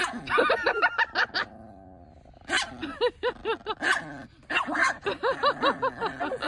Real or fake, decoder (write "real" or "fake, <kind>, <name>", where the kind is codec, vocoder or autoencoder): real